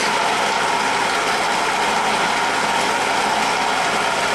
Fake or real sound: real